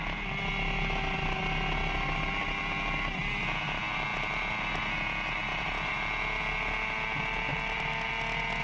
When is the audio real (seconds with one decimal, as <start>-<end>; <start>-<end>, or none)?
0.0-5.5; 6.0-7.5; 8.1-8.6

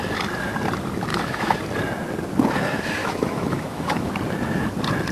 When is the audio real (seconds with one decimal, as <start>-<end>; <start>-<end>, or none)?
0.0-1.1; 1.6-3.0; 4.1-5.1